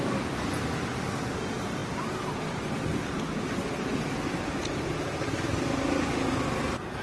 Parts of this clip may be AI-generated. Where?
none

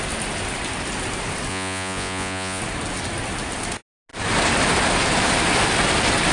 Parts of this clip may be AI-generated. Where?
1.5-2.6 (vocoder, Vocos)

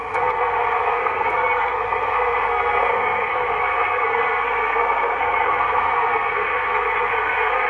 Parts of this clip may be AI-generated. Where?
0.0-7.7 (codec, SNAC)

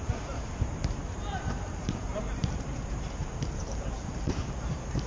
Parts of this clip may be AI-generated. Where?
0.0-5.1 (vocoder, BigVGAN v2)

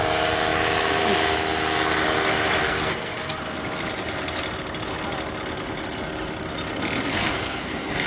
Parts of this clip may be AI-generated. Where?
2.6-3.4 (codec, SNAC); 7.1-8.1

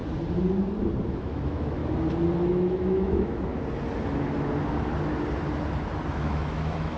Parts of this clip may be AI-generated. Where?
1.1-1.8 (autoencoder, DAC-VAE); 2.5-3.5; 6.1-7.0

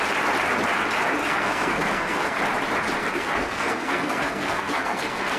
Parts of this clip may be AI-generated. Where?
1.2-2.4 (codec, SNAC); 3.0-5.4

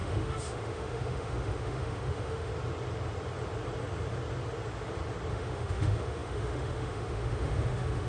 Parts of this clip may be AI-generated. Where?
0.0-2.5 (autoencoder, DAC-VAE); 5.3-8.1